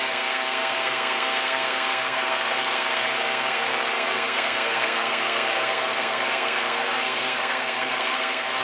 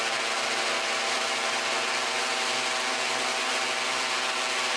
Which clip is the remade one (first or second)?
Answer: first